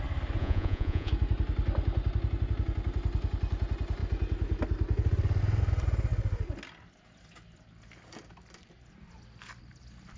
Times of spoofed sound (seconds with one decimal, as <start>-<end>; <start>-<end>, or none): 0.4-1.1